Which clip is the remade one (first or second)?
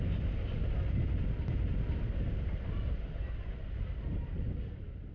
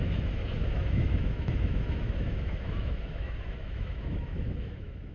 second